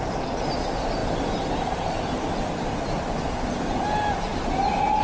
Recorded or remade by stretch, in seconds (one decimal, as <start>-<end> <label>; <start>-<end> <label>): 0.0-5.0 recorded